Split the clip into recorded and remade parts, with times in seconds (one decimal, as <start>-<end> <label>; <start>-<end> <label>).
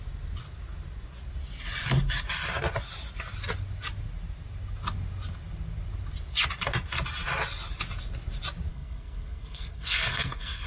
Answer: 0.0-8.7 recorded; 8.7-10.7 remade